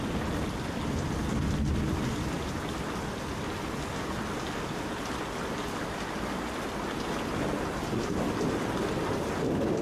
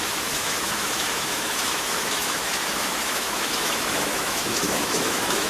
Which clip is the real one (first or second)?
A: first